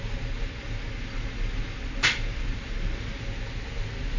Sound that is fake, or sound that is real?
real